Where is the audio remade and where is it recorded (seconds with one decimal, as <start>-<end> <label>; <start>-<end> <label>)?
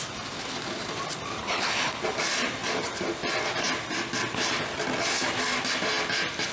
0.0-1.4 recorded; 1.4-2.0 remade; 2.0-6.5 recorded